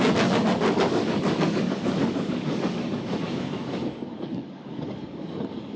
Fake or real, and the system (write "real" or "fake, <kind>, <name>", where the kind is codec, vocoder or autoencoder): fake, codec, DAC